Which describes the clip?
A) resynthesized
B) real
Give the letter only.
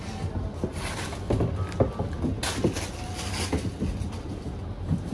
B